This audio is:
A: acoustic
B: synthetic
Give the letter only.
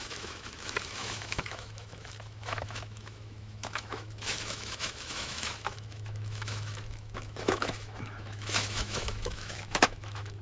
B